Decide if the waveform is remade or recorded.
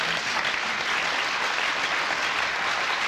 recorded